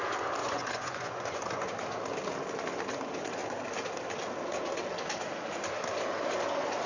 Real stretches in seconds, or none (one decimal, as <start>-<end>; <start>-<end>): 0.0-0.4; 1.7-6.9